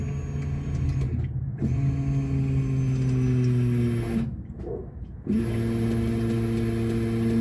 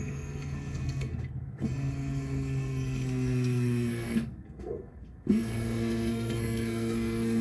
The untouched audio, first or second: first